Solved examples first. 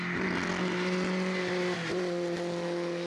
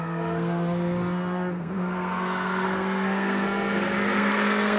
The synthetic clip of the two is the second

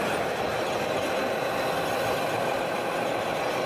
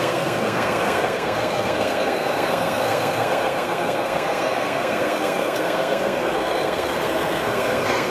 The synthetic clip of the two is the second